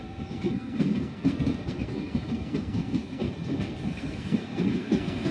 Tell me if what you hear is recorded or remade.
remade